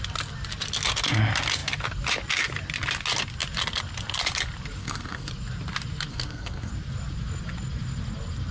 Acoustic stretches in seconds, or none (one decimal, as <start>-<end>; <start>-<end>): 0.0-4.8; 5.3-6.1; 6.7-8.5